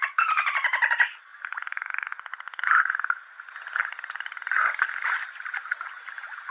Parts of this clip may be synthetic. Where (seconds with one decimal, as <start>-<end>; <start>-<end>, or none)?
none